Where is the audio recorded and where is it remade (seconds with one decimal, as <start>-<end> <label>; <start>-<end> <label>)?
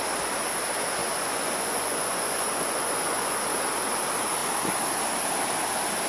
0.0-1.0 recorded; 1.0-3.4 remade; 3.4-6.1 recorded